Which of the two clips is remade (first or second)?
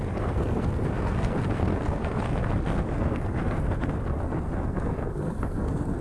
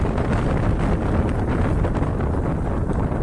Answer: first